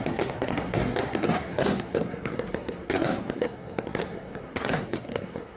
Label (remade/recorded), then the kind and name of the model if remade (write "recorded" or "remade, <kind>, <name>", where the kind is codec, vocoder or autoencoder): remade, codec, SNAC